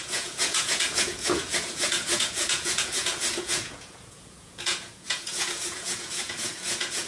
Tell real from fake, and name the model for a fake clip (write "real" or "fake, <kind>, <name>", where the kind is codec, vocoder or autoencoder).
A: fake, vocoder, Vocos